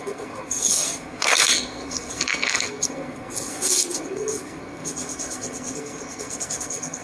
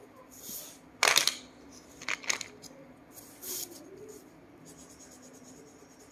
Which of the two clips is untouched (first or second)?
second